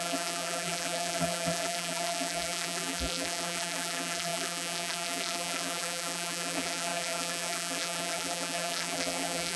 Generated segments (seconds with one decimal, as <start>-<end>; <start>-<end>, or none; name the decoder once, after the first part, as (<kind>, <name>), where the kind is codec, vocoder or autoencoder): 0.0-9.6 (vocoder, BigVGAN v2)